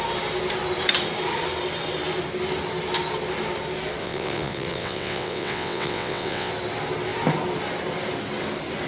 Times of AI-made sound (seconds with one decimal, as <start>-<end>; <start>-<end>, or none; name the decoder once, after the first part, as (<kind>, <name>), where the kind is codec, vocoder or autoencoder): 4.0-6.5 (vocoder, WaveNeXt)